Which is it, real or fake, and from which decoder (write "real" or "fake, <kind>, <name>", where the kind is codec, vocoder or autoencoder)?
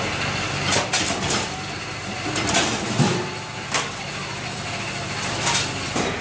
fake, vocoder, BigVGAN v2